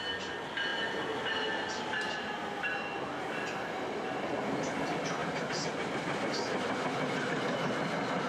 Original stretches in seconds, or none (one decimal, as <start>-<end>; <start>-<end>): 0.0-8.3